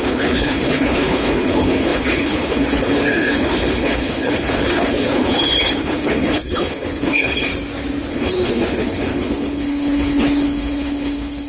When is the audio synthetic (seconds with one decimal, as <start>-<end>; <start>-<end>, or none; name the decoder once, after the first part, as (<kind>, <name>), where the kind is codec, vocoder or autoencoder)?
0.0-7.5 (codec, HILCodec); 8.1-11.5